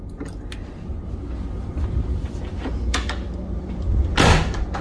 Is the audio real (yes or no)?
yes